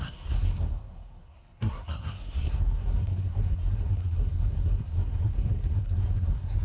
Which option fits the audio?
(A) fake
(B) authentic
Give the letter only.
A